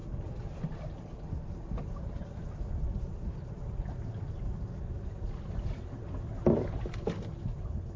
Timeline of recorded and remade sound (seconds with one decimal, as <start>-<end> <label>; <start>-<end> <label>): 0.0-8.0 recorded